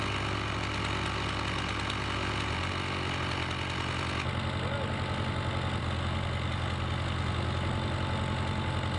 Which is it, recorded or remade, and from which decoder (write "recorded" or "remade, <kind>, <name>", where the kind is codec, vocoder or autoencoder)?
recorded